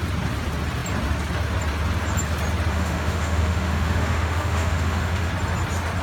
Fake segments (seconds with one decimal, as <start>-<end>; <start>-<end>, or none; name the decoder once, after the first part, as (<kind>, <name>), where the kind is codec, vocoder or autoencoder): 2.7-5.3 (autoencoder, DAC-VAE)